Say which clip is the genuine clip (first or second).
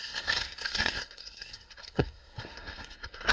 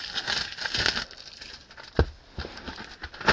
second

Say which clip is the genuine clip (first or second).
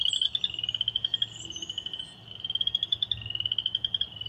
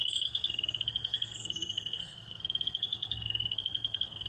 first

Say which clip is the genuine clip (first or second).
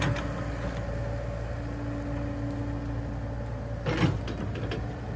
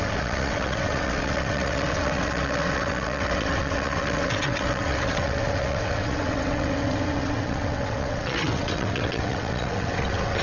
first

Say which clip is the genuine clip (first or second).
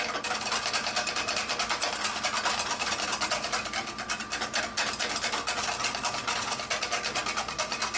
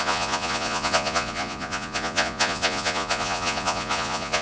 first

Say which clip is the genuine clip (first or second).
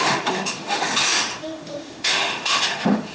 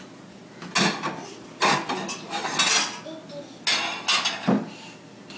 second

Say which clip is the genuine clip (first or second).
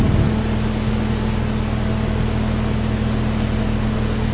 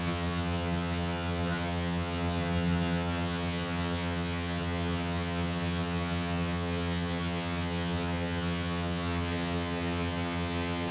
first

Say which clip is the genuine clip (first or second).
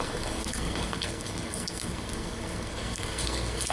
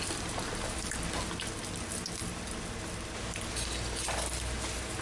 second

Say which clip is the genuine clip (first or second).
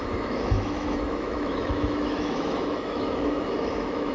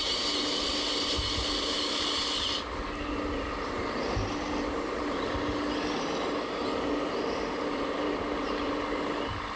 second